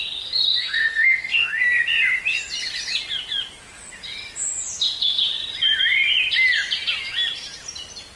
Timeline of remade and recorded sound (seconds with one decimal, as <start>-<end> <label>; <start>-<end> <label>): 0.0-0.6 recorded; 0.6-1.6 remade; 1.6-8.2 recorded